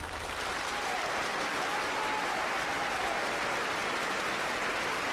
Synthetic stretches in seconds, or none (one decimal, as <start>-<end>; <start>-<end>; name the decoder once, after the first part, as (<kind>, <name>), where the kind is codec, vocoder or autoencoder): none